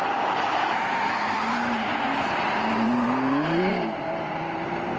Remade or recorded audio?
remade